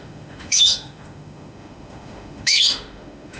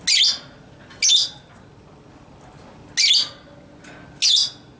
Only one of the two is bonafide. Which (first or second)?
second